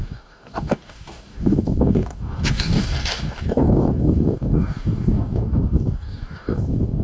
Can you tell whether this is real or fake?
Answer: fake